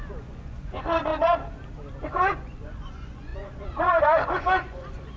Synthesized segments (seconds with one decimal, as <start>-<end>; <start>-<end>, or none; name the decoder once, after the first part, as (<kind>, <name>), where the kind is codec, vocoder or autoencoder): 0.0-1.1 (vocoder, Vocos); 2.0-5.2